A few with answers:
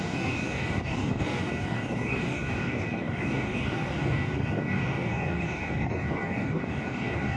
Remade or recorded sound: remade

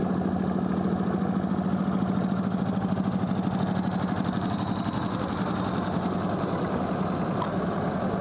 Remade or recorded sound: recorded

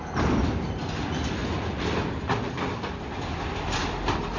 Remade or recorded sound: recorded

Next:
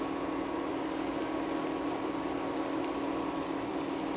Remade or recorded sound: recorded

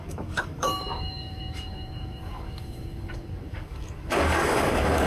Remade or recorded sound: remade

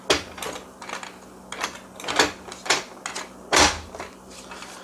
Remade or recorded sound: recorded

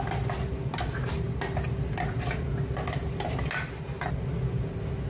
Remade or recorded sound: recorded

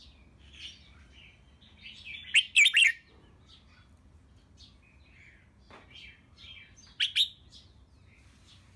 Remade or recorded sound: recorded